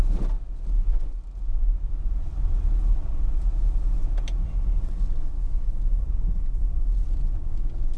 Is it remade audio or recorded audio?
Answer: recorded